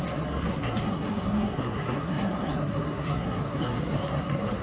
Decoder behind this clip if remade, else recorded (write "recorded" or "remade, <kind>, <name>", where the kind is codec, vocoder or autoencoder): remade, codec, SNAC